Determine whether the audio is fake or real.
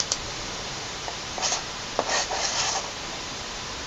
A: fake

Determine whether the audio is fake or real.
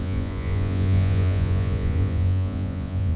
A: fake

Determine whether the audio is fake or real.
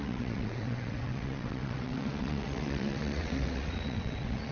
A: fake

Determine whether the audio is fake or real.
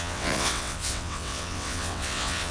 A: fake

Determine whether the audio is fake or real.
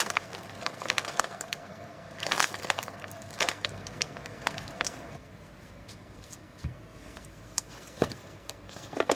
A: fake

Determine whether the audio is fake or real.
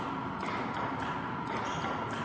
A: real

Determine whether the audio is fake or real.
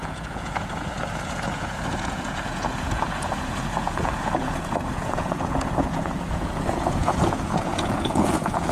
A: fake